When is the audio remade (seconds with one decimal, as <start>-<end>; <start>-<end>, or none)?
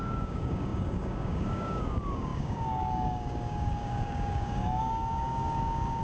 0.0-6.0